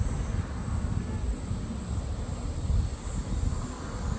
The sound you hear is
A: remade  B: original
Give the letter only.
B